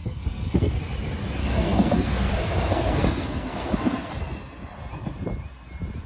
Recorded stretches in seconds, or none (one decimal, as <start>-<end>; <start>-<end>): 0.8-1.4; 4.1-6.1